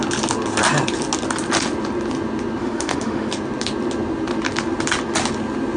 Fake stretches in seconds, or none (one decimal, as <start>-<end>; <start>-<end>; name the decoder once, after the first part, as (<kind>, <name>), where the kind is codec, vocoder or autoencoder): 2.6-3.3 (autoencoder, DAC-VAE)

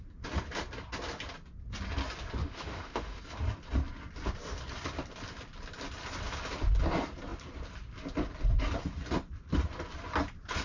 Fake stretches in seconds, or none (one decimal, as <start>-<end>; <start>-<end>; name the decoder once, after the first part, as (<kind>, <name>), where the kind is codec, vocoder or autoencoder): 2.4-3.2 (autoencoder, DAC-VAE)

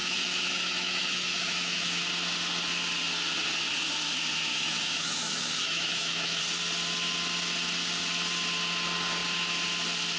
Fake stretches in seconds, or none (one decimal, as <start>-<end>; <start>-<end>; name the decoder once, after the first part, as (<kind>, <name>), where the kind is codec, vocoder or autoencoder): 0.0-2.0 (autoencoder, DAC-VAE); 4.5-6.4

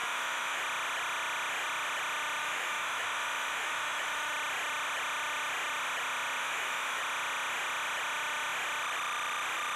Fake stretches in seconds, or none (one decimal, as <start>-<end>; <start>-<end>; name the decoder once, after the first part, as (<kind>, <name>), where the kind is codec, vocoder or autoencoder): 0.0-0.6 (autoencoder, DAC-VAE); 2.4-4.3; 6.4-7.0

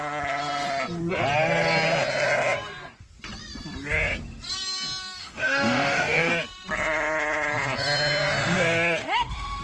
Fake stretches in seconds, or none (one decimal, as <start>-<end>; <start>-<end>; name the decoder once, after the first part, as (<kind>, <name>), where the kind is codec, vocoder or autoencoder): 5.2-6.3 (autoencoder, DAC-VAE); 9.0-9.6

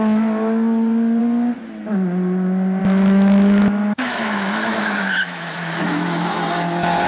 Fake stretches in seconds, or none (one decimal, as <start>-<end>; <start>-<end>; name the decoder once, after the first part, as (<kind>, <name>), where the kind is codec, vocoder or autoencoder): 2.8-6.3 (autoencoder, DAC-VAE)